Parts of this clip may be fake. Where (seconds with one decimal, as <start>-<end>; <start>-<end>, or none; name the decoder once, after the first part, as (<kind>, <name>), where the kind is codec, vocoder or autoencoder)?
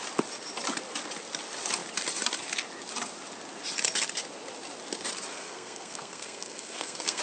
5.3-7.2 (codec, SNAC)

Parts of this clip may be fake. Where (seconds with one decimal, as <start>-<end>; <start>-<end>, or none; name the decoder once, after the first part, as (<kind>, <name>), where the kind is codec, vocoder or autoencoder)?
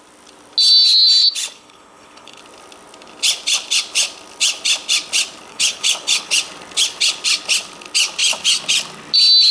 1.2-2.4 (codec, HILCodec); 5.5-6.3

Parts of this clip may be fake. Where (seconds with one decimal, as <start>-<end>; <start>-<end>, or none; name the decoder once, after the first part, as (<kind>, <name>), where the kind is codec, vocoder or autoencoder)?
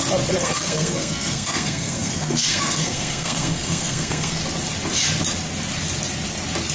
0.4-4.4 (codec, SNAC)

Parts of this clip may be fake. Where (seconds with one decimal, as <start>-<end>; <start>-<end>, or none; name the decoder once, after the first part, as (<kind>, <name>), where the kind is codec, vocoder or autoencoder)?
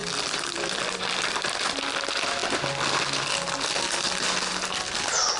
0.0-1.5 (vocoder, BigVGAN v2)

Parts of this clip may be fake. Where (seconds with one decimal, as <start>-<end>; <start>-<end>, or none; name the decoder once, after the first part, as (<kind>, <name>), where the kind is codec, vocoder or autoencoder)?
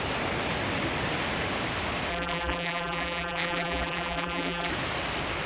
2.1-4.7 (vocoder, BigVGAN v2)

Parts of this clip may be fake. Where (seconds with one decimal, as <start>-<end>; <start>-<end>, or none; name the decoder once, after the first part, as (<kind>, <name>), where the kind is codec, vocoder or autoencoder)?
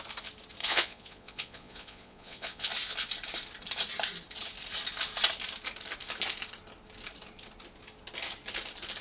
0.6-2.7 (vocoder, Vocos)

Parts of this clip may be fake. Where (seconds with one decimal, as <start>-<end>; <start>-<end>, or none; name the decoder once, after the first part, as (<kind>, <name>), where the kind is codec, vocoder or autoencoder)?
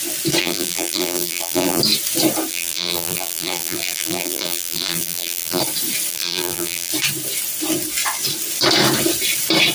0.4-1.8 (vocoder, BigVGAN v2); 2.5-5.6; 6.1-6.9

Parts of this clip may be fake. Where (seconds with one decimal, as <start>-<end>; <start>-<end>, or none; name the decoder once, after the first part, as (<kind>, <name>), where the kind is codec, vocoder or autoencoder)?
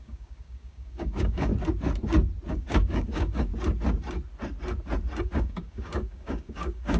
0.0-1.5 (codec, DAC); 2.5-3.5; 5.2-7.0